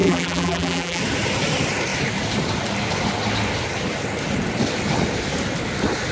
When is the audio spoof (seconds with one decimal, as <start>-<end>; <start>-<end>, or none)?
0.0-1.0